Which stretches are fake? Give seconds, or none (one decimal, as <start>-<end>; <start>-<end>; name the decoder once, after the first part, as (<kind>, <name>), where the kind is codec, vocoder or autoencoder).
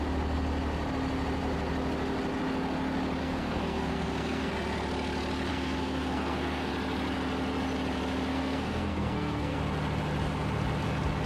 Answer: 3.2-4.5 (codec, SNAC); 5.5-6.7; 8.3-9.6